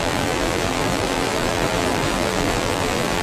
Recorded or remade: remade